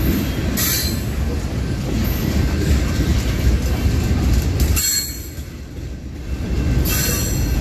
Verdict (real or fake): real